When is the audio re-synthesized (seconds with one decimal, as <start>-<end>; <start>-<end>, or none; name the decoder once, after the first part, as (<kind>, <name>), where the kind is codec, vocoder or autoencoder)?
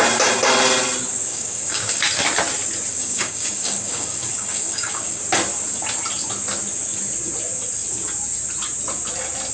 1.3-2.0 (codec, DAC); 2.9-5.2